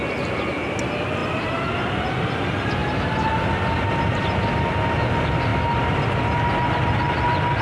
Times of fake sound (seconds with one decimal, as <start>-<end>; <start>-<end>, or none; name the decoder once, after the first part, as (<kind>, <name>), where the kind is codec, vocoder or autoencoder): none